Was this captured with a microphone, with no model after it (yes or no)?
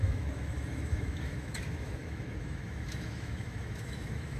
no